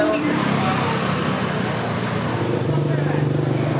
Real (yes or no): yes